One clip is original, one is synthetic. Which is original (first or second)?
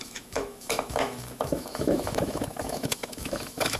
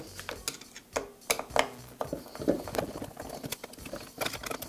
second